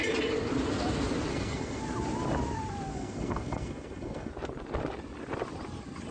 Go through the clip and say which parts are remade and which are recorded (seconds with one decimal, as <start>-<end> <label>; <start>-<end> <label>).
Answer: 0.0-1.3 recorded; 1.3-1.8 remade; 1.8-2.9 recorded; 2.9-4.3 remade; 4.3-6.1 recorded